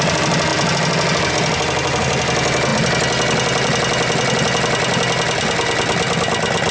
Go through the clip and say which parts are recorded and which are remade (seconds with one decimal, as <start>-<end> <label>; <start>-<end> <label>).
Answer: 0.0-6.7 recorded